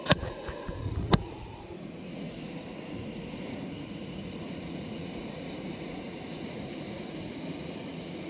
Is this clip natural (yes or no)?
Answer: no